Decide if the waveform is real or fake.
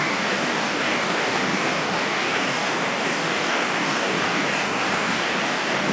fake